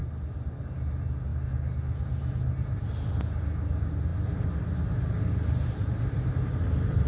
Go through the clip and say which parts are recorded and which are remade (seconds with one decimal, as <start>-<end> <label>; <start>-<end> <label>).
0.0-4.1 recorded; 4.1-7.1 remade